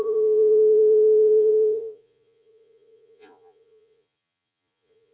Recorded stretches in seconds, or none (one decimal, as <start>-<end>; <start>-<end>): none